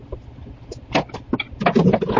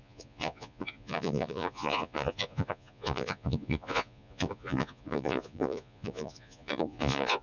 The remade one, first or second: second